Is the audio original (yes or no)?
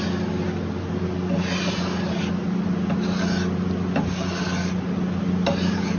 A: yes